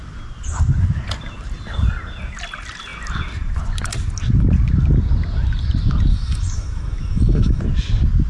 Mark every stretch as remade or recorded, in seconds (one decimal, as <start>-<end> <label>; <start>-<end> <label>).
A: 0.0-6.1 recorded; 6.1-7.6 remade; 7.6-8.3 recorded